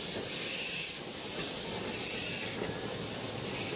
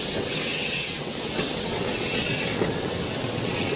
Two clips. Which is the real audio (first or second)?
first